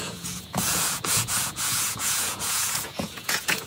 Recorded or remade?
remade